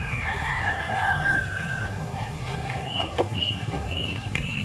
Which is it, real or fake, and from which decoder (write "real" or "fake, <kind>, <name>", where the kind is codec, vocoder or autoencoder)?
fake, codec, SNAC